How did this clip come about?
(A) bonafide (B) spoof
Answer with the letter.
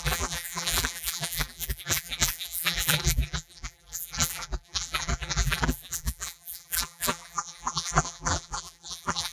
B